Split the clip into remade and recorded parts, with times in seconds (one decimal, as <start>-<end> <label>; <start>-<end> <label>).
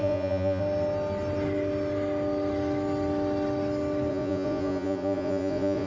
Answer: 0.0-0.6 remade; 0.6-4.1 recorded; 4.1-5.9 remade